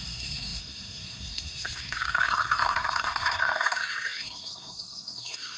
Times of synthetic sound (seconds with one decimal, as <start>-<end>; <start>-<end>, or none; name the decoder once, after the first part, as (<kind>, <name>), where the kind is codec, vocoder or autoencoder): 0.0-5.6 (codec, SNAC)